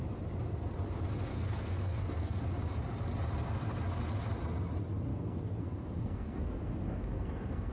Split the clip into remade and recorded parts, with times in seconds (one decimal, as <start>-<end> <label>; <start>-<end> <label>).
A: 0.0-1.3 recorded; 1.3-2.4 remade; 2.4-5.1 recorded; 5.1-7.7 remade

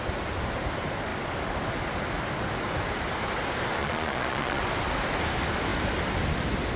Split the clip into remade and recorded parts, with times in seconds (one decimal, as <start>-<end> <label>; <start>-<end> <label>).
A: 0.0-3.8 recorded; 3.8-4.6 remade; 4.6-6.8 recorded

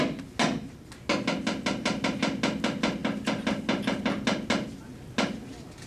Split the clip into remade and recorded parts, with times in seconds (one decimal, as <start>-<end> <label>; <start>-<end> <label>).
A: 0.0-5.9 recorded

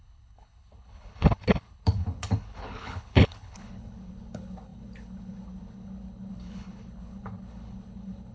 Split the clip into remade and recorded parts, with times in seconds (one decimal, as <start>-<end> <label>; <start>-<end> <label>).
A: 0.0-8.3 remade

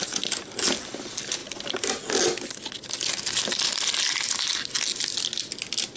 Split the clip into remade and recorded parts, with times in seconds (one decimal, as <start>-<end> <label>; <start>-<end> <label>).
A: 0.0-6.0 recorded